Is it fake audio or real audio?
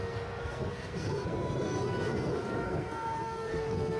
fake